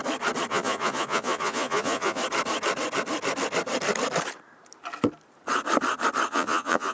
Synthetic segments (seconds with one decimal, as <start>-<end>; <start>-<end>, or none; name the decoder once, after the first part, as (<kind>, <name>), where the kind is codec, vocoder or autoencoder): 0.5-2.2 (vocoder, Vocos); 6.3-6.9